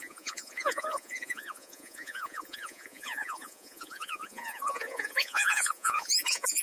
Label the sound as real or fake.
fake